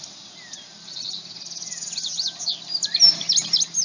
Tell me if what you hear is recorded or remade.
recorded